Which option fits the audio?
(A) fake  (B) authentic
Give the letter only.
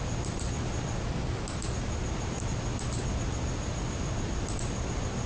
B